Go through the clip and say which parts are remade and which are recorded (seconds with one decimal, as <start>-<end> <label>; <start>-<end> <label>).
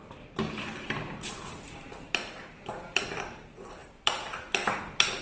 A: 0.0-5.2 remade